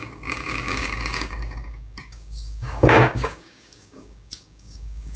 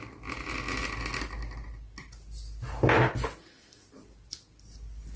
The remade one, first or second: first